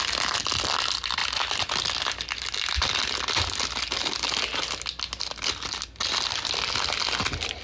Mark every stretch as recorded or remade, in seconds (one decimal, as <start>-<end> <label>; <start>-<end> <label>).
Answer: 0.0-7.6 recorded